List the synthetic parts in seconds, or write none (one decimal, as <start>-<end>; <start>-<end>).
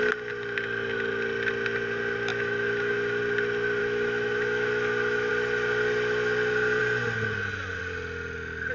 2.3-3.2; 3.8-5.3